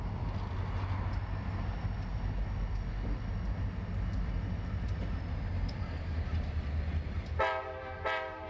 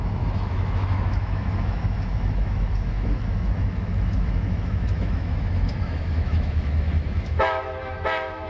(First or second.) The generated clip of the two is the second